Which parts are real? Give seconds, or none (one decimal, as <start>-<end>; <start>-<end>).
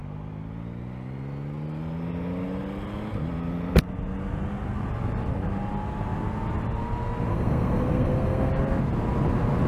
0.0-7.3; 8.5-9.7